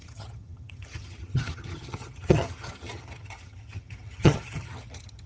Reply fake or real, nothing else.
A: fake